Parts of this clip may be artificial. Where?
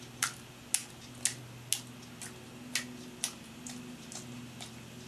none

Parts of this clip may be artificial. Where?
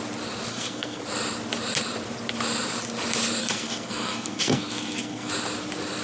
0.5-1.0 (codec, SNAC); 3.4-5.3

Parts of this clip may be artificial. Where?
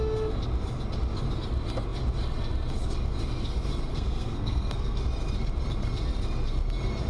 3.9-5.0 (codec, SNAC)